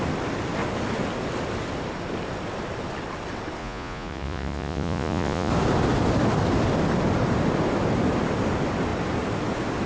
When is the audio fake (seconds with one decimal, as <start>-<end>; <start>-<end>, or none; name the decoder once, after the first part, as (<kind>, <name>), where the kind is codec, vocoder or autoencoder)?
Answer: 3.6-5.5 (vocoder, Vocos)